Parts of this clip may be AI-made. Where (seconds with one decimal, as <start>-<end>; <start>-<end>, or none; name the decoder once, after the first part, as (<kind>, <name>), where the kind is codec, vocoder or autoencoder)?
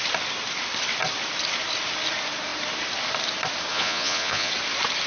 3.7-4.5 (vocoder, Vocos)